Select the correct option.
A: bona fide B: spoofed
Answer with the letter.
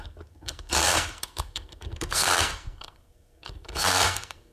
B